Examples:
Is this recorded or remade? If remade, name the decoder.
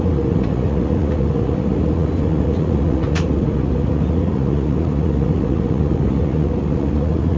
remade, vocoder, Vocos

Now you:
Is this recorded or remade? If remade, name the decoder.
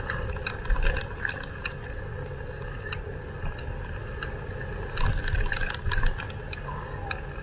recorded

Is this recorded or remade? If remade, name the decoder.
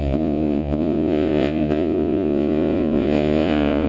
remade, vocoder, Vocos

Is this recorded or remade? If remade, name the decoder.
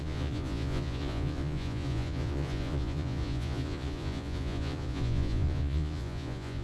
remade, vocoder, Vocos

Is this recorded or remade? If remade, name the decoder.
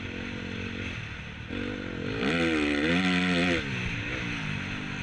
recorded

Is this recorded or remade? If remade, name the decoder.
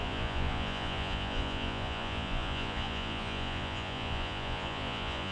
remade, vocoder, Vocos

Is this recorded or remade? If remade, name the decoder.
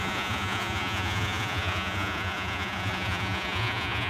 remade, vocoder, Vocos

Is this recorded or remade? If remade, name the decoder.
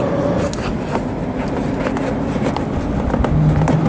recorded